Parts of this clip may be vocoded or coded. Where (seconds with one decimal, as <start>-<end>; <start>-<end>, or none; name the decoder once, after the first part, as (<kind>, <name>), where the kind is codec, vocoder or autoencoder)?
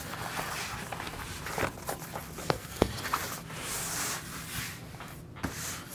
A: 2.4-2.9 (codec, SNAC)